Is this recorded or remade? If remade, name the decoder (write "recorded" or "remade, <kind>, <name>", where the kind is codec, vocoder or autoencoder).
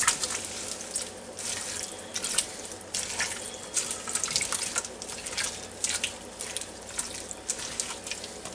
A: recorded